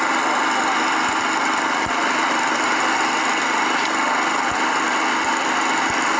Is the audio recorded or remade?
recorded